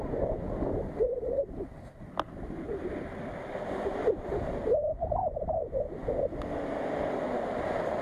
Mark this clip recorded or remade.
recorded